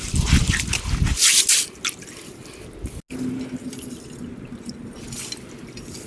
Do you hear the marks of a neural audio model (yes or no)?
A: no